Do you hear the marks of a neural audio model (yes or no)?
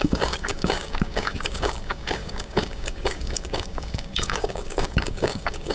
yes